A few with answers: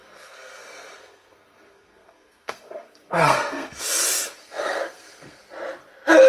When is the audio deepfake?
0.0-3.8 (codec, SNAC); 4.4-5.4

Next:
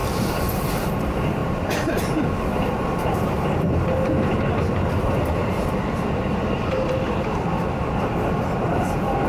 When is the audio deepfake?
1.4-3.5 (vocoder, BigVGAN v2); 5.4-7.5

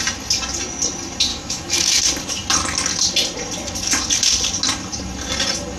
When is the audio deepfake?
1.3-2.0 (autoencoder, DAC-VAE)